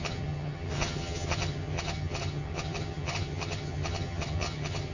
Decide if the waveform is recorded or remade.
remade